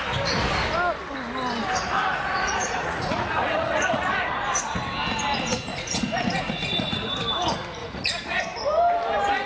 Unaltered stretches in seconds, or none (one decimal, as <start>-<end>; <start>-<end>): 0.0-2.1; 4.8-5.7; 7.1-7.8; 8.4-9.5